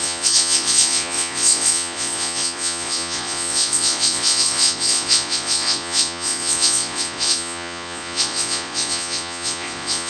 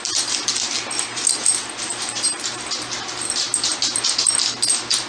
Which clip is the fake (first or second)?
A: first